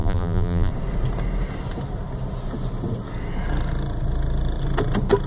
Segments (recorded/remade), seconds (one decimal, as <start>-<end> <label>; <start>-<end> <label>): 0.0-0.7 remade; 0.7-5.3 recorded